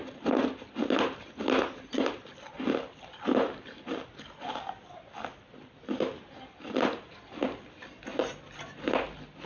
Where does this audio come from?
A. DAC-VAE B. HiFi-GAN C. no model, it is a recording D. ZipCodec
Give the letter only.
C